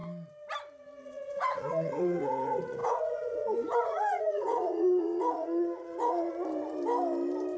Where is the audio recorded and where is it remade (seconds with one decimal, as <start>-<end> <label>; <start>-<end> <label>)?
0.0-1.0 recorded; 1.0-6.3 remade; 6.3-7.6 recorded